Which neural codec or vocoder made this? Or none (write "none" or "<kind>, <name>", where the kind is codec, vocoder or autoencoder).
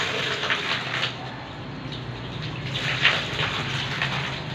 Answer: none